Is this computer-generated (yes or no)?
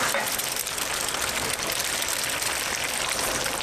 yes